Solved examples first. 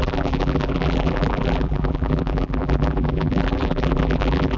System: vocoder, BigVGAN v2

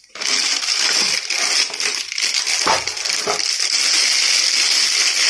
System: none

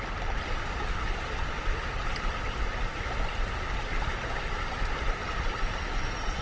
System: none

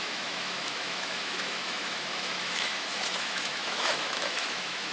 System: autoencoder, DAC-VAE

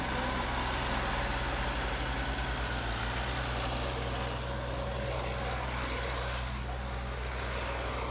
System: none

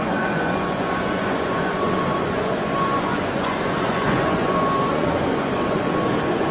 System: vocoder, Vocos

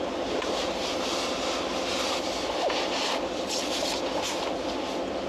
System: none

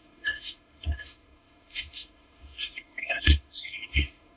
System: codec, SNAC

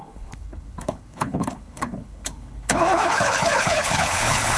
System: codec, HILCodec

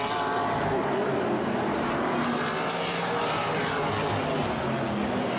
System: none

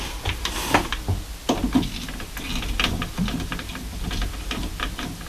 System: none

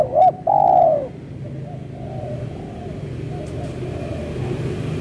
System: none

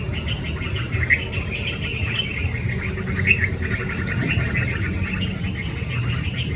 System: none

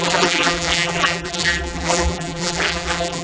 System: vocoder, BigVGAN v2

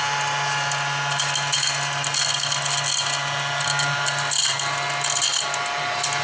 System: none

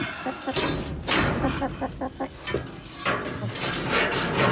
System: none